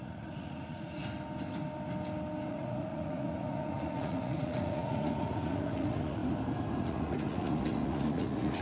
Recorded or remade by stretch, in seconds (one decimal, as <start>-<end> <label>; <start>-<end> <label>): 0.0-1.0 remade; 1.0-2.5 recorded; 2.5-6.2 remade; 6.2-6.8 recorded; 6.8-8.6 remade